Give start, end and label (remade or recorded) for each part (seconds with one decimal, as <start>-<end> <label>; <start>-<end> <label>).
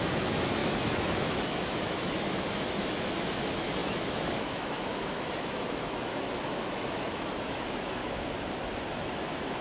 0.0-8.0 remade; 8.0-8.9 recorded; 8.9-9.6 remade